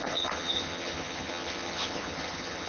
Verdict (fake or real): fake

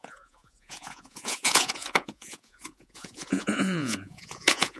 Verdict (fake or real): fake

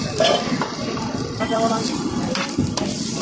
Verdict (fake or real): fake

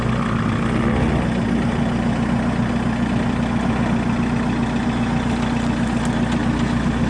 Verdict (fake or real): real